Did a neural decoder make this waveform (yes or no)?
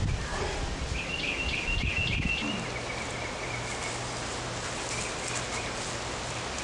no